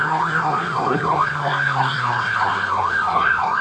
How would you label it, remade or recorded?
remade